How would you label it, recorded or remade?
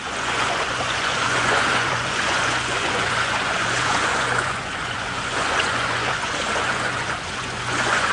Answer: remade